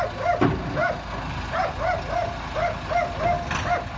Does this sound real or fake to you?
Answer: real